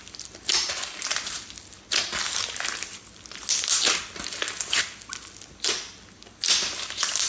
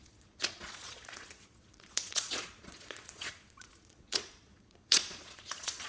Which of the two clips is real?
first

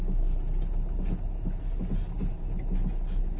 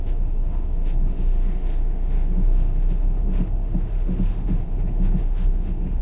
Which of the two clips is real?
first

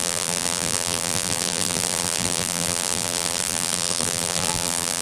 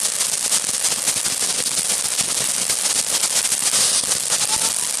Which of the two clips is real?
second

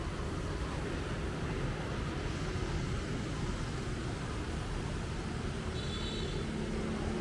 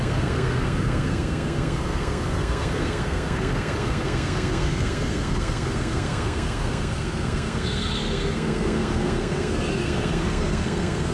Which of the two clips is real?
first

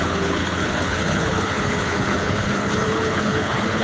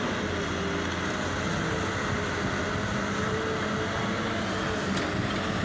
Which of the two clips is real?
second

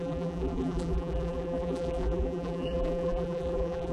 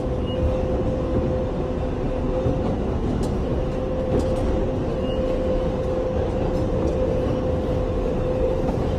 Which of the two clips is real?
second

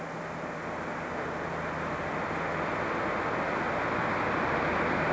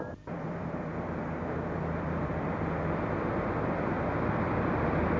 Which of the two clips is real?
first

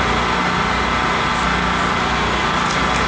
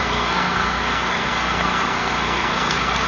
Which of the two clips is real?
first